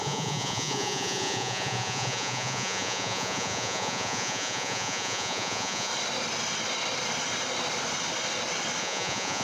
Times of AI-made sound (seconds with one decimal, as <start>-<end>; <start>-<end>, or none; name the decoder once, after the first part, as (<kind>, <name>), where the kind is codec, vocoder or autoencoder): 0.0-5.9 (vocoder, Vocos); 8.8-9.4